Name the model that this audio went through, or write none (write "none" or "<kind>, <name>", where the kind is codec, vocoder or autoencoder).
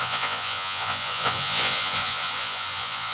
vocoder, Vocos